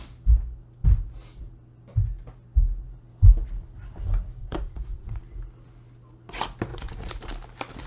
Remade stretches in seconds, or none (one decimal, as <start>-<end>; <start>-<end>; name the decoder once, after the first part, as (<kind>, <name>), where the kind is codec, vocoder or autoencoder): 4.4-5.2 (vocoder, Vocos); 6.7-7.2